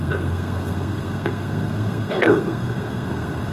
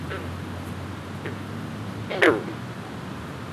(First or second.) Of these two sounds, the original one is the second